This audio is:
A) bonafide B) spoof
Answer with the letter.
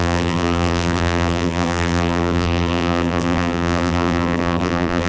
B